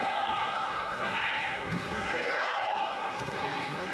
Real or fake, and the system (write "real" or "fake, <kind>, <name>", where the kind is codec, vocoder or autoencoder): fake, codec, SNAC